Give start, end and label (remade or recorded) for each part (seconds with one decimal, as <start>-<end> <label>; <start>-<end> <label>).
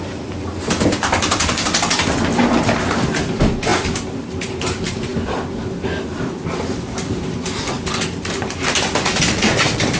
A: 0.0-5.1 remade; 5.1-6.1 recorded; 6.1-10.0 remade